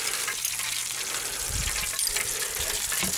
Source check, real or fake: real